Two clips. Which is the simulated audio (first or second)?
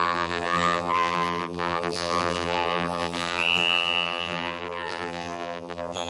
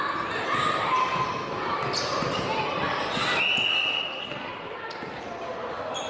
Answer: first